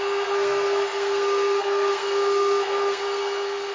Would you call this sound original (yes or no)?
no